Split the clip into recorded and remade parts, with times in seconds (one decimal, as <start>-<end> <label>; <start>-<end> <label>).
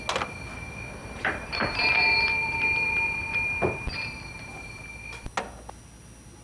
0.0-1.0 recorded; 1.0-4.8 remade; 4.8-6.4 recorded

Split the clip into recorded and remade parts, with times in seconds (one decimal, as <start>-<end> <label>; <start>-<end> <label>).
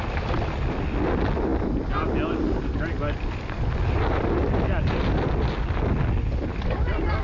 0.0-7.2 recorded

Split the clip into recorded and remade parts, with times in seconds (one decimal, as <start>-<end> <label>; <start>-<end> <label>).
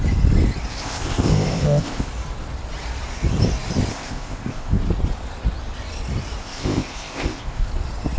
0.0-0.7 recorded; 0.7-2.1 remade; 2.1-3.9 recorded; 3.9-4.8 remade; 4.8-6.4 recorded; 6.4-7.7 remade; 7.7-8.2 recorded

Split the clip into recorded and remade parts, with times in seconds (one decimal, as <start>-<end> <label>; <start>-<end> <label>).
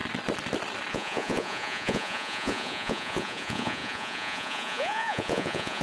0.0-0.9 recorded; 0.9-5.8 remade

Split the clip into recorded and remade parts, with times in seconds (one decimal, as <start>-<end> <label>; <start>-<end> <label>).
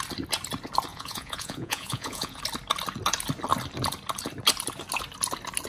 0.0-0.9 recorded; 0.9-2.4 remade; 2.4-5.7 recorded